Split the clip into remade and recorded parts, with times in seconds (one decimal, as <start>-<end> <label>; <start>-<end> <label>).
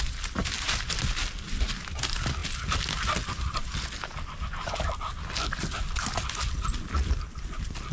0.0-7.9 recorded